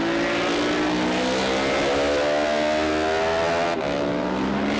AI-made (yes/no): no